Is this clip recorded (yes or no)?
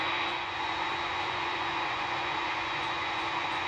no